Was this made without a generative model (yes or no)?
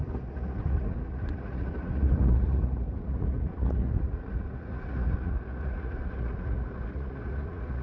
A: no